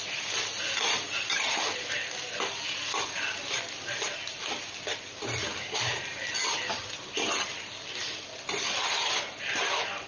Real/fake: real